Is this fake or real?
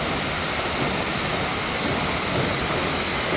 real